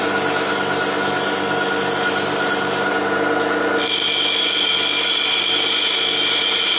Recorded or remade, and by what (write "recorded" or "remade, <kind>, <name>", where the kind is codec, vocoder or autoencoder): recorded